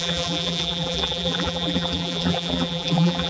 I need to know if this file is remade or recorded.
remade